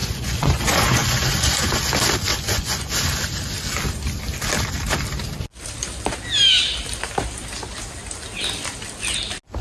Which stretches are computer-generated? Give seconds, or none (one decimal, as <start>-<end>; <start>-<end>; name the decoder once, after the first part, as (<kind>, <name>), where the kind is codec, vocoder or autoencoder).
0.0-1.8 (vocoder, Vocos); 2.3-2.9